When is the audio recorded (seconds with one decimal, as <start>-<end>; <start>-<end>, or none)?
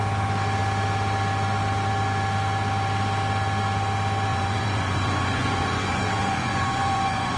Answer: 0.0-4.3